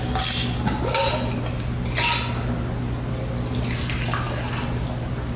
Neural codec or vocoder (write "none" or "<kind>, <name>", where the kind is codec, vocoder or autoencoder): none